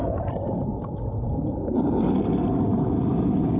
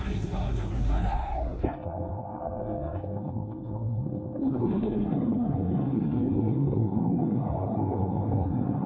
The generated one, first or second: second